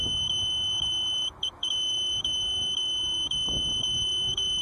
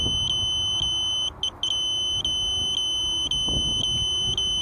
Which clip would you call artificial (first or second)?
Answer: first